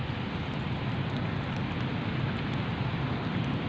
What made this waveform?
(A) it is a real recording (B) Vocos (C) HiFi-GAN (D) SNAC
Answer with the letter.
A